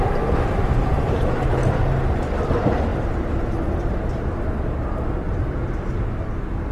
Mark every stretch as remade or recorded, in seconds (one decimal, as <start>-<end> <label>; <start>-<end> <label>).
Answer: 0.0-0.6 recorded; 0.6-1.8 remade; 1.8-6.7 recorded